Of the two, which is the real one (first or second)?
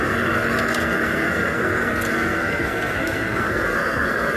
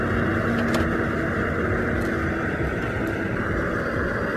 second